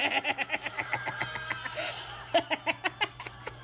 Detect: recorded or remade recorded